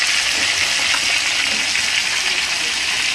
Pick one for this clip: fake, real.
real